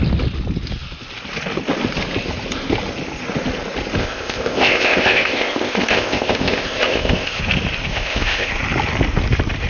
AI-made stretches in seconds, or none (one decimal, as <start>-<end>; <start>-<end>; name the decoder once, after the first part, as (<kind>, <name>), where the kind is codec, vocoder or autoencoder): 4.0-7.4 (codec, ZipCodec); 7.9-8.5